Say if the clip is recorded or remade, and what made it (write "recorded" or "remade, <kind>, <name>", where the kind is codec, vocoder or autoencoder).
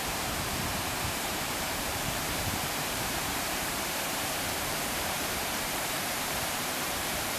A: remade, vocoder, BigVGAN v2